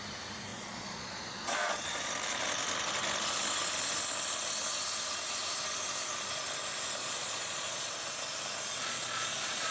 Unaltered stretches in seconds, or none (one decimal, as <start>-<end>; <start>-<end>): 0.0-0.5; 2.1-7.0; 7.9-8.8